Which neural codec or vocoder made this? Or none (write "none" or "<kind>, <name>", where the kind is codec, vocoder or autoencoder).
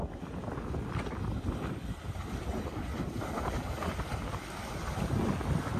none